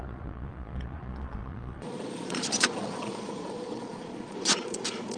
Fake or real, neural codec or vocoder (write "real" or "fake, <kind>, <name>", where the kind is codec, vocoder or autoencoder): fake, vocoder, Vocos